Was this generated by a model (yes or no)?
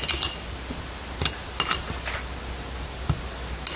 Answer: no